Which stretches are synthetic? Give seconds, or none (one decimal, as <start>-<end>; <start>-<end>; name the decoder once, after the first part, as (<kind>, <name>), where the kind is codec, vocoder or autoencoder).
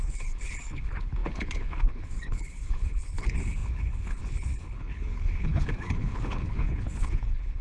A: 0.0-7.6 (codec, HILCodec)